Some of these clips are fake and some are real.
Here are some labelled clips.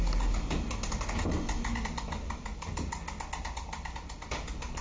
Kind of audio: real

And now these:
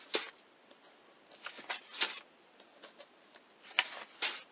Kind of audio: real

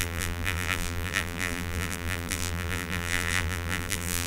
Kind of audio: fake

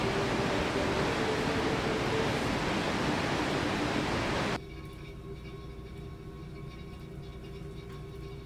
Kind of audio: real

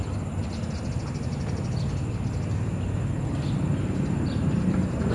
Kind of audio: real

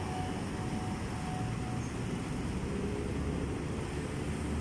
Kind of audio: real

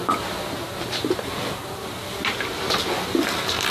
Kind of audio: real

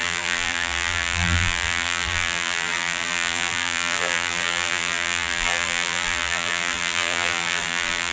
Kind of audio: fake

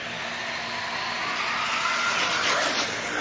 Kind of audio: real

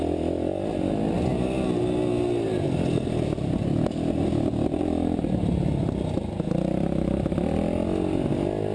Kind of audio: real